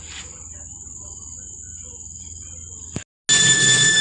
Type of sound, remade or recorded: recorded